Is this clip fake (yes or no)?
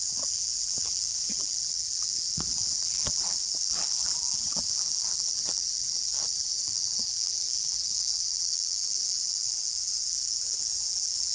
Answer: yes